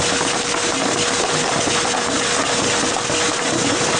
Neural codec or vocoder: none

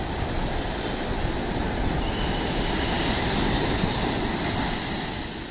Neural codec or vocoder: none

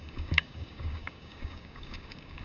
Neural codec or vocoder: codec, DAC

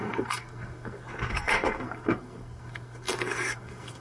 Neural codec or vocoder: codec, SNAC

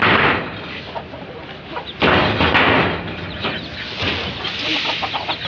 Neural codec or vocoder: none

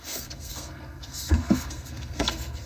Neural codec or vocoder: codec, SNAC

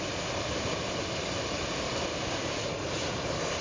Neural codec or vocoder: none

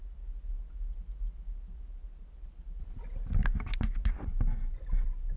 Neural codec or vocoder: none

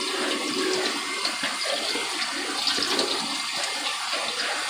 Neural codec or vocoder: none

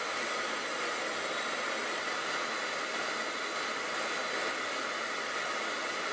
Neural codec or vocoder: none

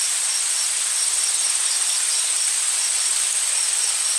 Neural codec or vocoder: none